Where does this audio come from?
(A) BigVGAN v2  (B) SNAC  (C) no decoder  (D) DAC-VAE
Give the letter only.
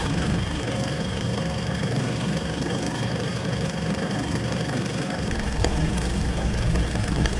B